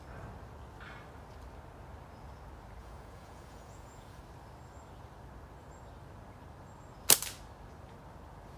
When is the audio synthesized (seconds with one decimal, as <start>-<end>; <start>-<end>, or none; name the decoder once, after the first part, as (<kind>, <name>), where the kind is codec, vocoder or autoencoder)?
2.8-4.2 (vocoder, Vocos)